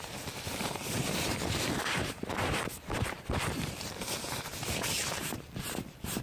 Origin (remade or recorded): remade